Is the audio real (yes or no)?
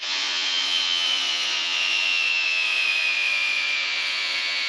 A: no